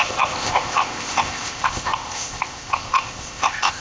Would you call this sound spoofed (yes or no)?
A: yes